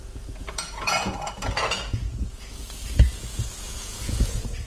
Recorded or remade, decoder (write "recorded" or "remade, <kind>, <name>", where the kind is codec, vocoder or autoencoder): remade, vocoder, Vocos